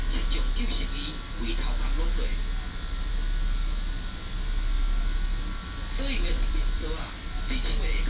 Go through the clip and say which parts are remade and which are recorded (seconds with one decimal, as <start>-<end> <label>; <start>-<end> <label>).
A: 0.0-5.6 recorded; 5.6-7.4 remade; 7.4-8.1 recorded